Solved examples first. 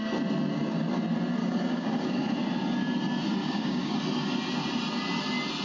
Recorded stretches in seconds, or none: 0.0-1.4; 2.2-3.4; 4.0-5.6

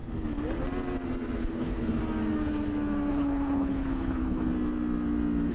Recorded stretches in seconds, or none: 0.0-1.4; 2.0-3.1; 4.5-5.5

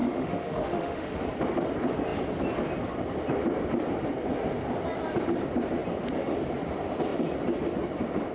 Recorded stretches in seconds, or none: 1.2-8.3

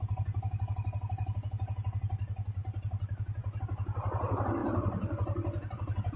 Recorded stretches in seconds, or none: 0.0-2.6; 3.6-4.6

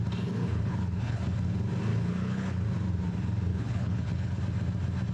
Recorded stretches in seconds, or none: 0.0-0.4; 1.2-1.9; 2.6-3.5; 4.4-5.1

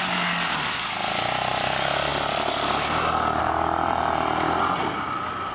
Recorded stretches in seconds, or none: 0.0-5.5

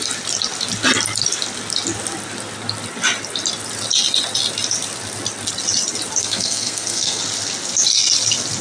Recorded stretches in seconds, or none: 0.0-6.2; 7.2-8.6

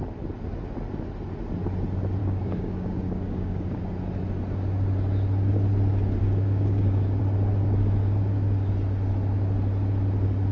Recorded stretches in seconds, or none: 0.0-2.2; 3.8-6.2; 7.2-10.5